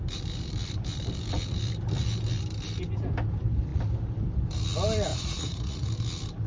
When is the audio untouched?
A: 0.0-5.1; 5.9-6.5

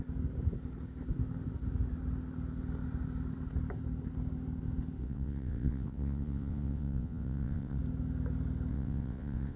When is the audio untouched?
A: 0.0-5.0; 7.8-8.7

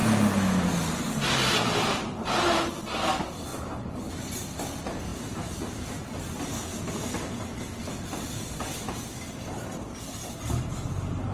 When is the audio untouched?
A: 0.0-3.5; 4.3-5.1; 5.9-11.3

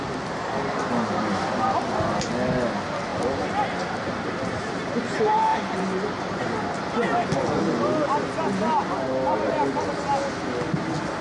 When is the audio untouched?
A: 0.0-5.5; 6.4-11.2

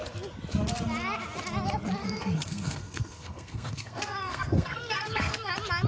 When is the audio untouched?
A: 0.0-2.0; 5.5-5.9

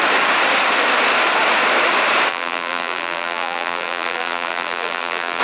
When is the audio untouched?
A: 0.0-2.3

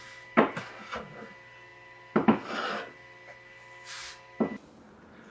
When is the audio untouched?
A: 0.0-5.3